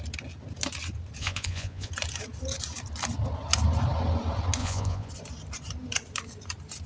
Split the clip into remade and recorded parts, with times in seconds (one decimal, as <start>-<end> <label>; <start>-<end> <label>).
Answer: 0.0-1.2 recorded; 1.2-1.9 remade; 1.9-4.6 recorded; 4.6-5.1 remade; 5.1-6.9 recorded